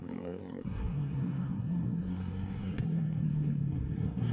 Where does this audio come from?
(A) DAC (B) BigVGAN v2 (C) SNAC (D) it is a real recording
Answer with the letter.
C